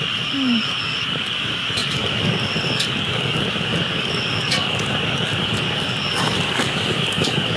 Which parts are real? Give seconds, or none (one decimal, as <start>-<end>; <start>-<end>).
none